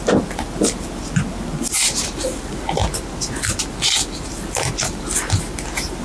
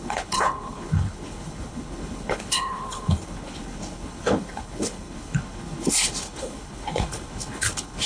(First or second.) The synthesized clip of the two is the second